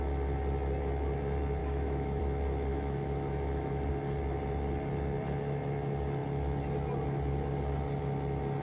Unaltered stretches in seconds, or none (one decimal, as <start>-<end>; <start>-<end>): 0.0-1.6; 2.2-2.7; 3.9-8.6

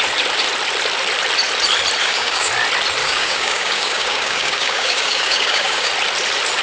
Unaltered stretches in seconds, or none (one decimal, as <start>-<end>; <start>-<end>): 0.0-2.0; 2.5-3.0; 5.9-6.6

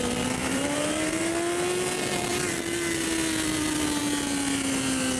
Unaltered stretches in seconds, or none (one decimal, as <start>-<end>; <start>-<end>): 0.0-0.4; 1.3-5.2

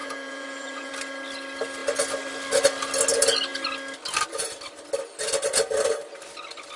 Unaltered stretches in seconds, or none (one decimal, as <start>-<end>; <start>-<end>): 0.9-6.8